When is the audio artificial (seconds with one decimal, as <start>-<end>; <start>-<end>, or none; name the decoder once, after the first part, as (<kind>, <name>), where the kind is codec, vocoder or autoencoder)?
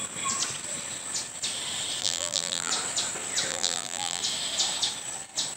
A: 2.0-2.7 (vocoder, BigVGAN v2); 3.5-4.2